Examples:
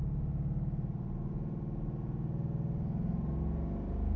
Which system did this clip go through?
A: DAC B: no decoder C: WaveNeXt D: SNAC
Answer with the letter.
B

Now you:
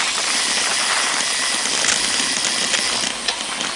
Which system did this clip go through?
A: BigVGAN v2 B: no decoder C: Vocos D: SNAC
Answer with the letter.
B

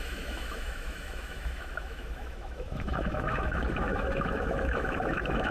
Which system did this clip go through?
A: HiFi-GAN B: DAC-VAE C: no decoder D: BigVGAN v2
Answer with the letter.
B